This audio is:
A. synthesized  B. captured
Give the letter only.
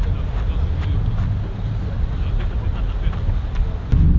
B